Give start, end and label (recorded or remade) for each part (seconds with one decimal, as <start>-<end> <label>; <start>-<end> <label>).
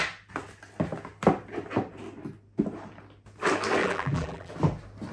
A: 0.0-3.8 recorded; 3.8-4.5 remade; 4.5-5.1 recorded